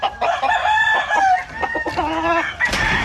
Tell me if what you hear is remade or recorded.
recorded